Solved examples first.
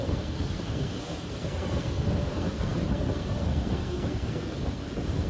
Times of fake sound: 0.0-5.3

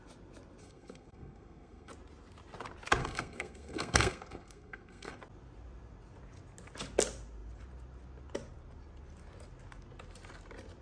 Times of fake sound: 0.6-1.9; 3.0-5.2

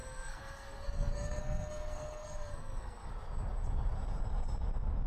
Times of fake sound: 0.0-3.1

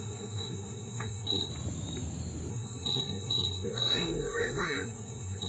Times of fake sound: 0.0-1.5; 2.5-5.5